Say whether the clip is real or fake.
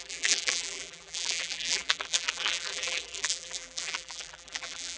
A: fake